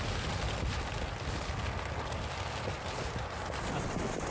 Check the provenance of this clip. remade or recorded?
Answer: recorded